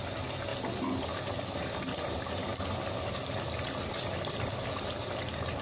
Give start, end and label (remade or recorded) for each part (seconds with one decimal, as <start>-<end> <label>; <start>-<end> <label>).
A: 0.0-5.6 recorded